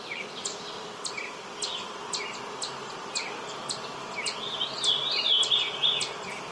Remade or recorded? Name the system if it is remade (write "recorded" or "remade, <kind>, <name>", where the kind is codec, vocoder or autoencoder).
recorded